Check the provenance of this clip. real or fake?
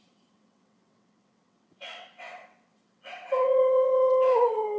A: fake